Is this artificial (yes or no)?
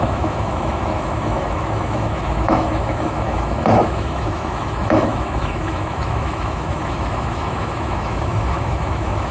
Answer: yes